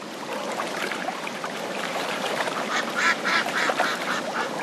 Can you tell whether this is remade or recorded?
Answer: remade